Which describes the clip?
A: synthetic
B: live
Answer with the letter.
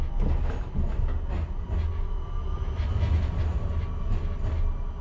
B